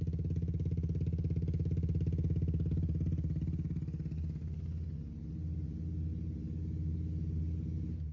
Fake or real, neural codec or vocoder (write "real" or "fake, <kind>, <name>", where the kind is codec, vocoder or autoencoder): real